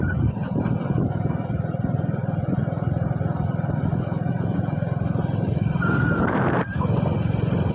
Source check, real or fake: real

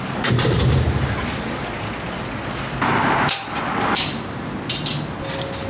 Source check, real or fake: real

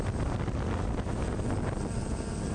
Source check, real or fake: real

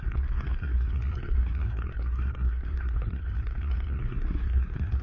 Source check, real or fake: fake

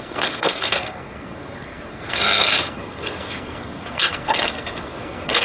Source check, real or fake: fake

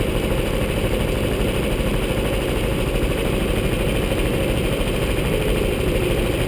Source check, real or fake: real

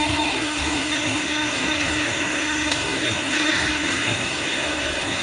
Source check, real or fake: fake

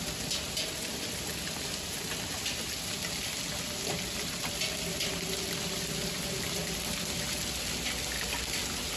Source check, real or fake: real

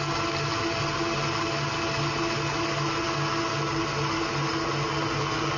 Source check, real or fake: real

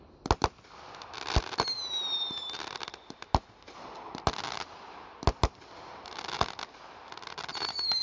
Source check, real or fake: real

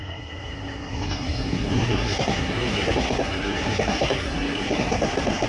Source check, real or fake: fake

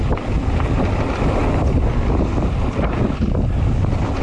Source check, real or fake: real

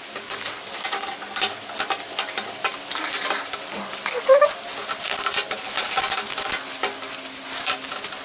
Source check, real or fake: real